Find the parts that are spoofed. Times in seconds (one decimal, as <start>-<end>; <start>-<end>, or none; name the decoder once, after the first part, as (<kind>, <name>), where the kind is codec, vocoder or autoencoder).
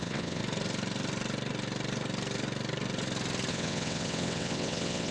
0.0-0.4 (vocoder, WaveNeXt); 3.5-5.1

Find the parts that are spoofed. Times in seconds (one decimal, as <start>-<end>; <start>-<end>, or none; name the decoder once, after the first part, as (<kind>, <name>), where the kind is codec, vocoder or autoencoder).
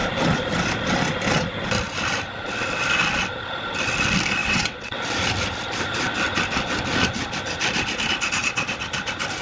4.4-5.0 (vocoder, WaveNeXt)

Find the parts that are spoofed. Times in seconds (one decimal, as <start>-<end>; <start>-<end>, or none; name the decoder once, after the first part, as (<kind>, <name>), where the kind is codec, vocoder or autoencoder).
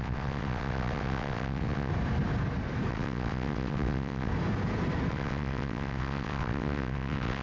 0.0-1.9 (vocoder, WaveNeXt); 2.9-4.3; 5.1-7.4